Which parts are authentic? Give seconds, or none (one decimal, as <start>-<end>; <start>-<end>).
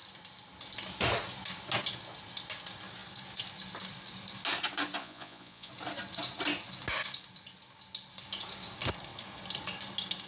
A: 0.0-5.0; 5.7-10.3